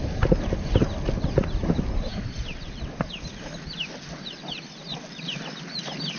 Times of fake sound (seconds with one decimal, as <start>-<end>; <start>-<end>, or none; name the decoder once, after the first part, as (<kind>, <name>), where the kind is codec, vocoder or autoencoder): none